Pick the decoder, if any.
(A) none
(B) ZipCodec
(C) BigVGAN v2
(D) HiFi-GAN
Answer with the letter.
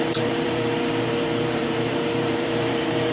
C